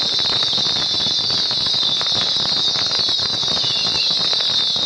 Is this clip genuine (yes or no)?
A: yes